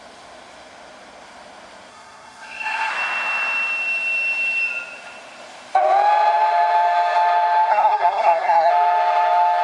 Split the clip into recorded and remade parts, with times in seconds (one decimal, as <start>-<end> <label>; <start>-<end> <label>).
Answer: 0.0-1.9 recorded; 1.9-2.9 remade; 2.9-7.7 recorded; 7.7-8.7 remade; 8.7-9.6 recorded